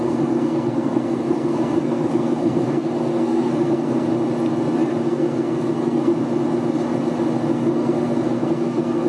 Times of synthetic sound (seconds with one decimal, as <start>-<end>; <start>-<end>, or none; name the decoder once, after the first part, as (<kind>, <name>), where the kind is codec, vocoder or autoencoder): 0.0-4.1 (codec, SNAC); 5.0-6.1; 7.5-9.1